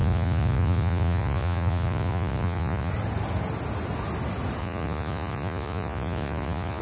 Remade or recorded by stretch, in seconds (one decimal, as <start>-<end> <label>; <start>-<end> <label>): 0.0-2.9 remade; 2.9-4.6 recorded; 4.6-6.8 remade